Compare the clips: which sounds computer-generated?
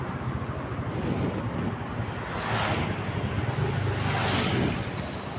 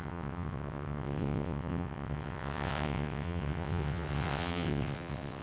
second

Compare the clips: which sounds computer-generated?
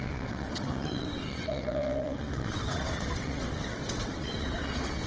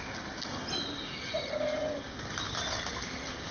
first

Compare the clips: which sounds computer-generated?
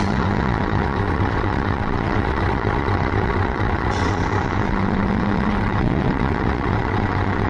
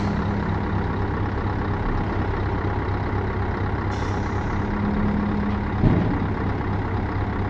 first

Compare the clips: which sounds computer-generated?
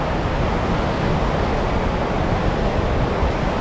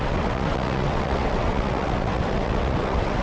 second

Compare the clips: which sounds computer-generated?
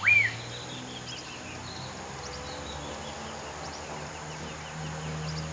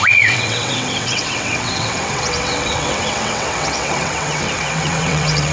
second